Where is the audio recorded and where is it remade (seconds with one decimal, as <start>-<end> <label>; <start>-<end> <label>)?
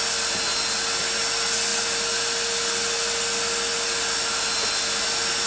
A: 0.0-5.5 recorded